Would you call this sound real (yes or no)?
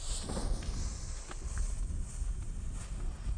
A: yes